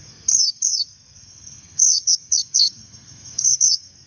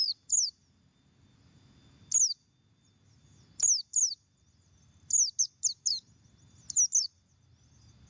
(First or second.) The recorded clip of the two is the second